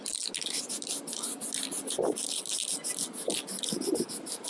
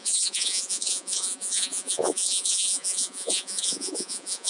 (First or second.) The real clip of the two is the first